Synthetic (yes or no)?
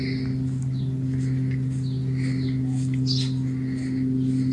no